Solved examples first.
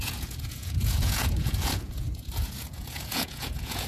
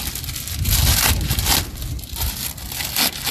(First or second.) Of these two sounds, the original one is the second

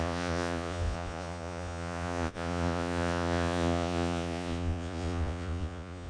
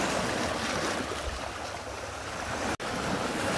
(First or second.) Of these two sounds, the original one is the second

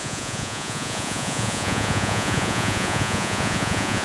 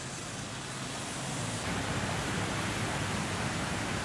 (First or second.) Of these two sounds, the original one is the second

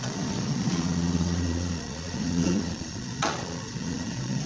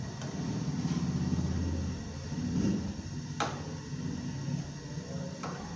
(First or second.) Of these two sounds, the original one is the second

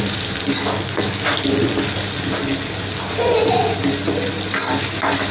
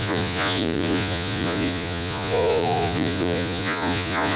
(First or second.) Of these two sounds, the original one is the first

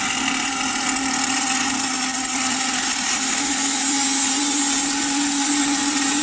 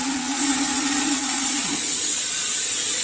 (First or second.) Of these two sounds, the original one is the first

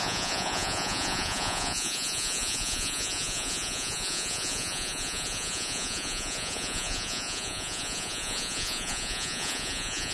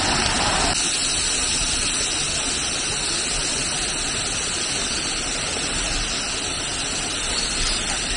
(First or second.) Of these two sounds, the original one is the second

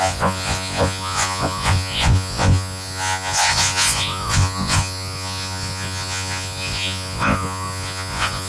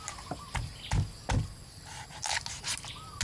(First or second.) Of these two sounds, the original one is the second